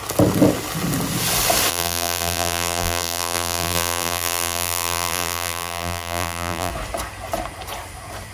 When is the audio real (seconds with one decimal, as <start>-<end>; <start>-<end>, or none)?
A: 0.0-1.7; 6.7-8.3